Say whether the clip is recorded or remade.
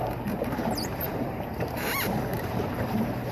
remade